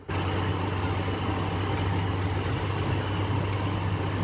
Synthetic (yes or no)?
no